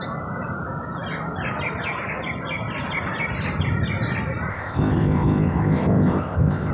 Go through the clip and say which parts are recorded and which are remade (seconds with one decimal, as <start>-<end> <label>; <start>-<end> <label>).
0.0-4.5 recorded; 4.5-6.7 remade